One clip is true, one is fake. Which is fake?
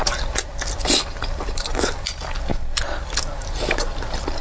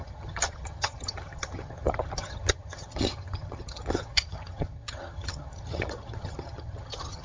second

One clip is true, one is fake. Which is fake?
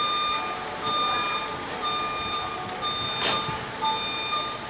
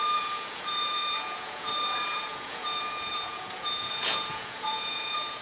second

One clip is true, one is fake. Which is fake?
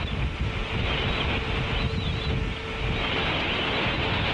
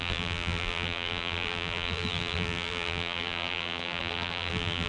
second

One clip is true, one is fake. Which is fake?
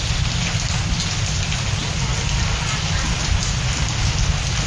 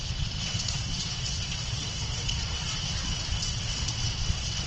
second